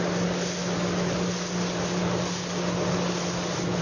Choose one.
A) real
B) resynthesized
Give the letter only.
A